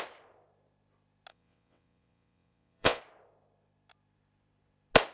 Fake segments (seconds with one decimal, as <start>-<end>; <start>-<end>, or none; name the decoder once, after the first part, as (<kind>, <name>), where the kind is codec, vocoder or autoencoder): 1.3-3.0 (vocoder, WaveNeXt)

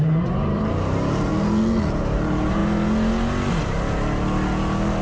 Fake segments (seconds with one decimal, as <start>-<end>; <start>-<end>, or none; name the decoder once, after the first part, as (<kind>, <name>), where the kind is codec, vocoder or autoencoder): 0.0-1.3 (vocoder, BigVGAN v2); 2.0-2.6